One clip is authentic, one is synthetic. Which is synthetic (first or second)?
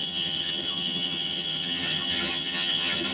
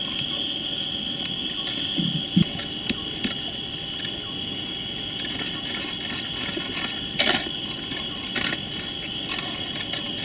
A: first